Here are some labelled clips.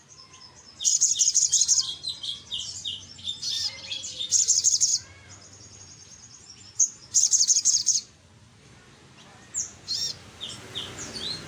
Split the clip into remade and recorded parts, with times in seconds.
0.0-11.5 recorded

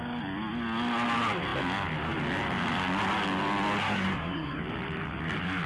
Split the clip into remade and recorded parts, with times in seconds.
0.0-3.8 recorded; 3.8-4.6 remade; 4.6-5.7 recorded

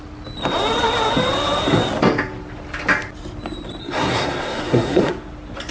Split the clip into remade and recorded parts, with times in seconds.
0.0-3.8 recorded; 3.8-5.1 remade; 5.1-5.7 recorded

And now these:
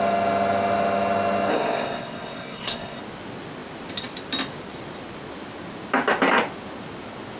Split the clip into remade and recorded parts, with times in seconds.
0.0-1.5 recorded; 1.5-3.0 remade; 3.0-7.4 recorded